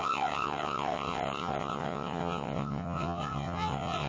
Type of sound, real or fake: fake